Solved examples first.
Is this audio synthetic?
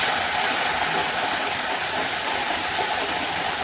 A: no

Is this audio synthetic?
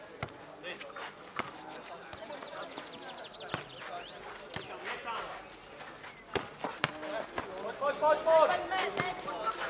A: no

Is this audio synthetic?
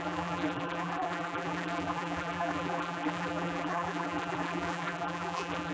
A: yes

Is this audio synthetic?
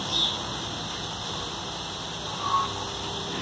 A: no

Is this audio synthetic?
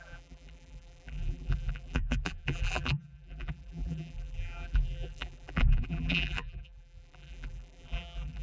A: yes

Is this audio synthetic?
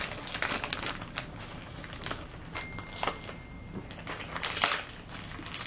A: no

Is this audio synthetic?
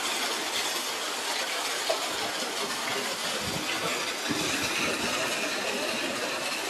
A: no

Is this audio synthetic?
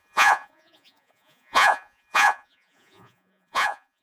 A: yes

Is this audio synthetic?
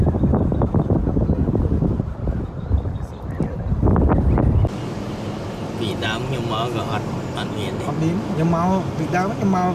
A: no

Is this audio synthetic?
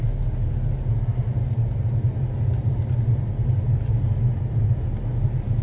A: no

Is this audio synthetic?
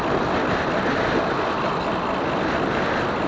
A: no